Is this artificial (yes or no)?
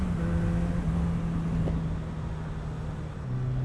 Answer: no